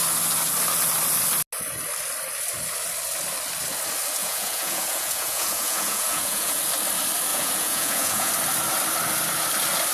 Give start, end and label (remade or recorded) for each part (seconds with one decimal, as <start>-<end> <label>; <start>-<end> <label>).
0.0-4.2 recorded; 4.2-6.6 remade; 6.6-7.3 recorded; 7.3-8.3 remade; 8.3-9.9 recorded